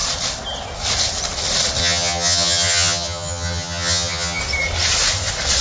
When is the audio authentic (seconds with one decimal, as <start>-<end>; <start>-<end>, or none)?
0.0-1.8; 4.4-5.6